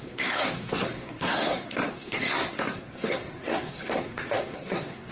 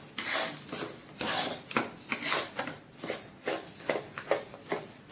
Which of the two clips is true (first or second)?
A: second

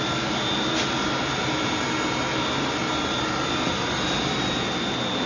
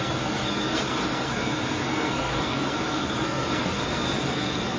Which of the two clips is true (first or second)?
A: first